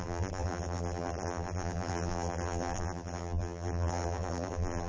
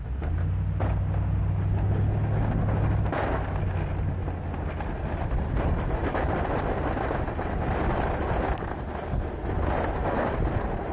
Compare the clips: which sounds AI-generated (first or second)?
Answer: first